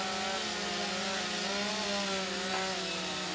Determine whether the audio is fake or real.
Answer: real